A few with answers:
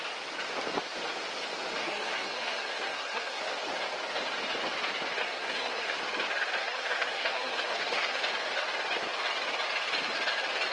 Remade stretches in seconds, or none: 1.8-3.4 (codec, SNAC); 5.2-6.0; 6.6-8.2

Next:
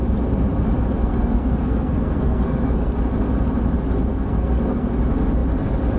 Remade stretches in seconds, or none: 1.0-2.9 (codec, SNAC); 4.1-4.9

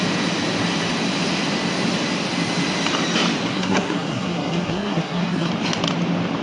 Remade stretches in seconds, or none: 3.5-5.5 (codec, SNAC)

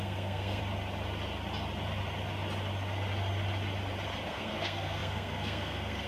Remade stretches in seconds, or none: 0.0-0.6 (codec, SNAC); 4.3-6.1

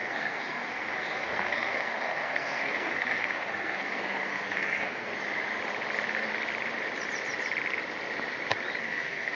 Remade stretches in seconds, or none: 0.0-5.1 (codec, SNAC); 8.8-9.4

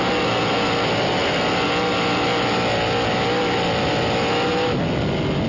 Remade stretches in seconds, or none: none

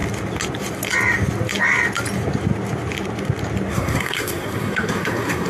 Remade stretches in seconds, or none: 3.7-5.5 (codec, SNAC)

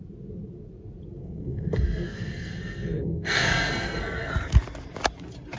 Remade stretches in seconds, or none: 1.2-4.3 (codec, SNAC)